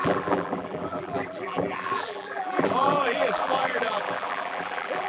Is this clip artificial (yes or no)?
yes